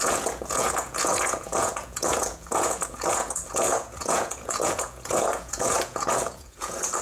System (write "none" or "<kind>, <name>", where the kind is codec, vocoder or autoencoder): vocoder, Vocos